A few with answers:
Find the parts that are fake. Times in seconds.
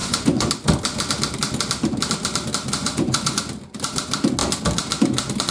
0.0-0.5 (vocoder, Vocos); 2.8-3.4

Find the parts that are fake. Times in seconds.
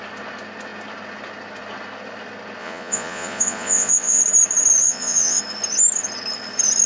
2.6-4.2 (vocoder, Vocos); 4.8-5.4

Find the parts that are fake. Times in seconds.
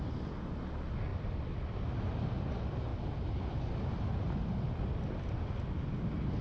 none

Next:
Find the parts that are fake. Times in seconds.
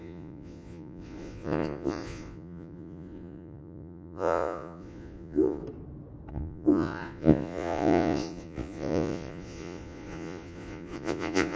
0.0-5.6 (vocoder, Vocos); 6.3-11.6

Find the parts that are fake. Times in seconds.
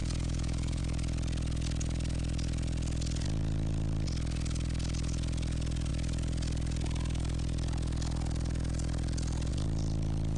0.0-0.8 (vocoder, Vocos)